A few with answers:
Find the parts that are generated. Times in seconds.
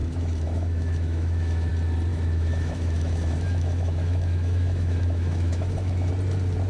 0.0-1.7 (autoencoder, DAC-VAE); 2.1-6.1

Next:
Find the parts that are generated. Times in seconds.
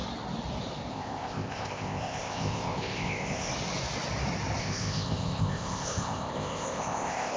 0.9-3.5 (codec, ZipCodec); 4.6-7.4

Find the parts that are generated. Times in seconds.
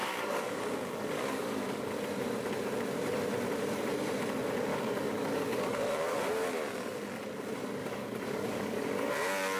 0.0-1.9 (codec, DAC); 4.7-6.2; 7.8-9.1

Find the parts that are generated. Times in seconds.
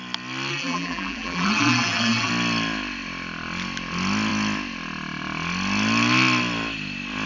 0.5-2.3 (vocoder, BigVGAN v2)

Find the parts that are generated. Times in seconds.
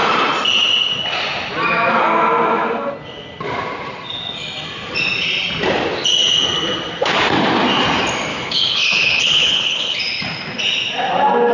8.3-10.0 (codec, HILCodec)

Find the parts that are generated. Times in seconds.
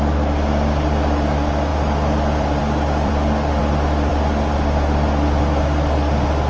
1.7-3.1 (vocoder, BigVGAN v2)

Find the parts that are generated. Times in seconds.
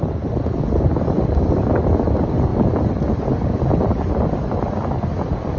0.0-2.5 (vocoder, BigVGAN v2); 4.6-5.6